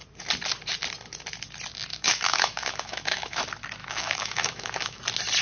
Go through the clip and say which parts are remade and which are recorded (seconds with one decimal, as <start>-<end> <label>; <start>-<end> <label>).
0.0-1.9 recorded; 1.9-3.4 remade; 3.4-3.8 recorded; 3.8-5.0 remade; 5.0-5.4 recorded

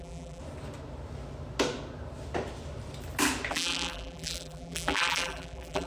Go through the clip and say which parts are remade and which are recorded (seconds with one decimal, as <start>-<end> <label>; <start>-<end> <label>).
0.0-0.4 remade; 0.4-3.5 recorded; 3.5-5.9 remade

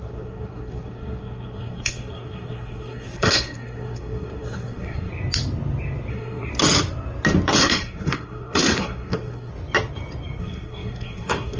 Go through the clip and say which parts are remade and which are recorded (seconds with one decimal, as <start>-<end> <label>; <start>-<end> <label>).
0.0-5.1 remade; 5.1-6.1 recorded; 6.1-6.5 remade; 6.5-7.6 recorded; 7.6-9.5 remade; 9.5-10.4 recorded; 10.4-11.6 remade

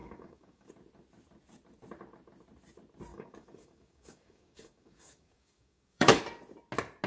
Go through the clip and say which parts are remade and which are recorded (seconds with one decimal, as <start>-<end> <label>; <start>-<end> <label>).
0.0-0.7 remade; 0.7-3.1 recorded; 3.1-6.2 remade; 6.2-7.1 recorded